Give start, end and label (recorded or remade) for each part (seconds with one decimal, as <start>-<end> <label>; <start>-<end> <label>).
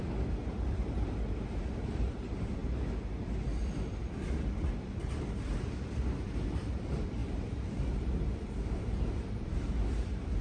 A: 0.0-2.6 remade; 2.6-4.3 recorded; 4.3-10.4 remade